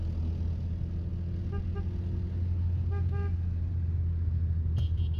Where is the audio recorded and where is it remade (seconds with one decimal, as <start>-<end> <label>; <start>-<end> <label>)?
0.0-5.2 recorded